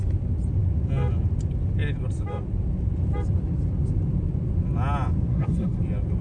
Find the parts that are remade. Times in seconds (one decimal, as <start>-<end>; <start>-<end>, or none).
5.3-5.8